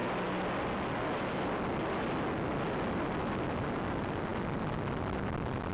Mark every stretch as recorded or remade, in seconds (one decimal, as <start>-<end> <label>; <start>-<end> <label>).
0.0-5.7 recorded